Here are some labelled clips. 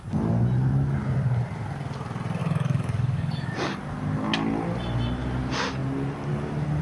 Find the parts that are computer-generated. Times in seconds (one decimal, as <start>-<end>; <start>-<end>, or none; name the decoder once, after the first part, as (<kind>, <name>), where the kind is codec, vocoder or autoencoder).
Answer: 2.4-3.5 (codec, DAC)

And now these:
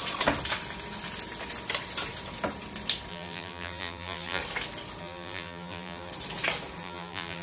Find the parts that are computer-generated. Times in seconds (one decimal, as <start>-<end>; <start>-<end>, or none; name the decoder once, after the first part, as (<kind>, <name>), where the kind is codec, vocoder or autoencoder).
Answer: 3.1-4.4 (vocoder, BigVGAN v2); 5.0-6.1; 6.8-7.4

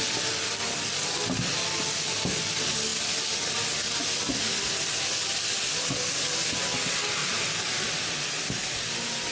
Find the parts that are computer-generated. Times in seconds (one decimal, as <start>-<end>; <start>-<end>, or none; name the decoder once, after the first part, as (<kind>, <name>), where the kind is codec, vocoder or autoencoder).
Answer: none